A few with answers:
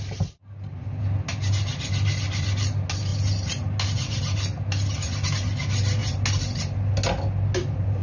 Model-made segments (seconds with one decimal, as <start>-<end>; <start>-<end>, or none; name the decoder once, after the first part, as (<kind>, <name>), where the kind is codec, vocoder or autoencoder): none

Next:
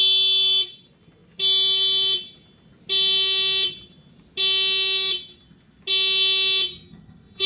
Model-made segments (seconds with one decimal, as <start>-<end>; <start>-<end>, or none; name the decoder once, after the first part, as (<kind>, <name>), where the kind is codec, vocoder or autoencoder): 6.7-7.5 (codec, SNAC)

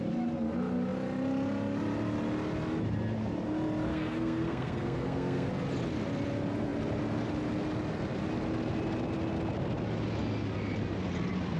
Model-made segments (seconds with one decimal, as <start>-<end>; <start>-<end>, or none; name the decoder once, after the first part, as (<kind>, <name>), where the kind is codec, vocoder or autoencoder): 3.9-5.5 (codec, SNAC)